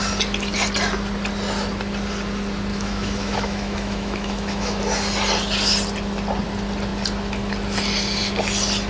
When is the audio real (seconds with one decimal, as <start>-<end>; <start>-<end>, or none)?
0.0-2.7; 4.8-8.9